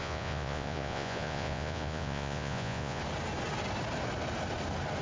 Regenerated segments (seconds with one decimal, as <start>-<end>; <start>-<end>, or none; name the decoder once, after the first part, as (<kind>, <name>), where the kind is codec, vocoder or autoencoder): 0.0-3.0 (vocoder, Vocos)